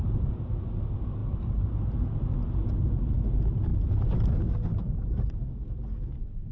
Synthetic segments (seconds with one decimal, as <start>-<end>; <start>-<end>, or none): 3.7-4.2